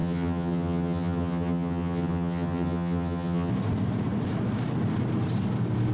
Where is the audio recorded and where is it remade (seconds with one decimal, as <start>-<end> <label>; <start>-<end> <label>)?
0.0-3.5 remade; 3.5-5.9 recorded